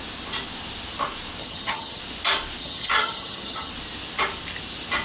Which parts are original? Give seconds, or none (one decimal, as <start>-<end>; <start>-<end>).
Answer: 0.0-1.4; 2.0-2.6; 3.7-5.0

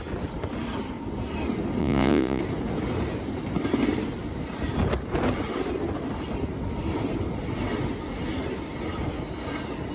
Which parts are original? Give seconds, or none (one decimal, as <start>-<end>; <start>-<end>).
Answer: 0.0-1.8; 2.4-9.9